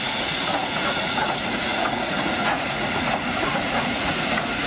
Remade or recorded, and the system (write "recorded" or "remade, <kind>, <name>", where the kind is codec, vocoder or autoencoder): remade, vocoder, Vocos